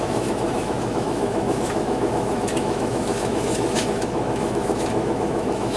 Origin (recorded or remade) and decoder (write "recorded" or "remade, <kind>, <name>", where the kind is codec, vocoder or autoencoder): remade, autoencoder, DAC-VAE